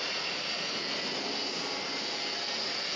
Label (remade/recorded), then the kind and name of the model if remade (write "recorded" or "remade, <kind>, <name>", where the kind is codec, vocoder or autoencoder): recorded